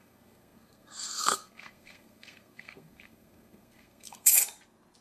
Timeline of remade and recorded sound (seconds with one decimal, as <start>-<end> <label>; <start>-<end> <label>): 0.0-4.4 remade; 4.4-5.0 recorded